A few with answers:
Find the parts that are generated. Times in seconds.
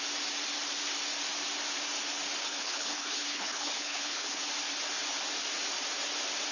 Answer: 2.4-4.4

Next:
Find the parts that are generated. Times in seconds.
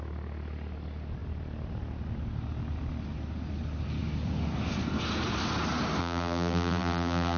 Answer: 6.0-7.4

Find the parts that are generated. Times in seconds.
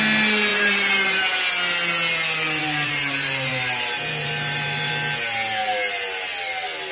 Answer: 0.5-1.4; 2.6-4.9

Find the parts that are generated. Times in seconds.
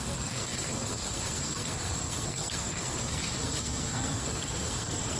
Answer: 0.0-5.2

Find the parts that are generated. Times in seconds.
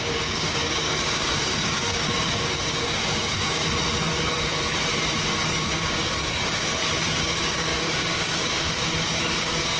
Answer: 0.0-3.6; 5.5-6.7; 7.2-9.8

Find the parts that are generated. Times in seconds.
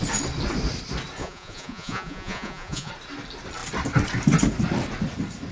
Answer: 1.2-2.9